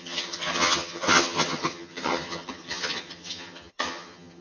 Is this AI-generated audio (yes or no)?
yes